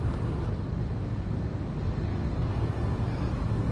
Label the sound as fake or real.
real